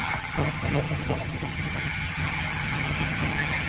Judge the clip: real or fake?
fake